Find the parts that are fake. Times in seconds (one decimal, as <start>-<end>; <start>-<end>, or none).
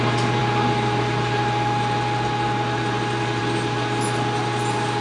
none